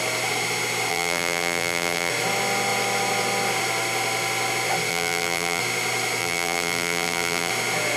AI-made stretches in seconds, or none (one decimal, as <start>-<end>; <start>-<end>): 0.9-2.1; 4.9-5.6; 6.2-7.5